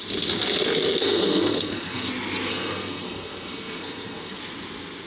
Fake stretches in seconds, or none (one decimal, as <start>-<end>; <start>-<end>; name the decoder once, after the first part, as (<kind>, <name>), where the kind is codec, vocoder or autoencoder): 1.0-2.1 (codec, SNAC); 2.5-4.4